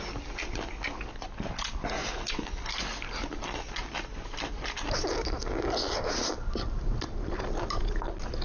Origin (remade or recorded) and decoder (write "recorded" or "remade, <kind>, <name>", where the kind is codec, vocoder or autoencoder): recorded